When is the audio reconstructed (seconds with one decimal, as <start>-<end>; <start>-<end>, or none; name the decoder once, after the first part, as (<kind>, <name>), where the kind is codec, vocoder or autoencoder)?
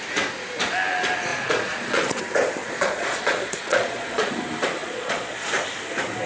1.3-2.2 (vocoder, Vocos); 2.6-4.3; 4.8-5.5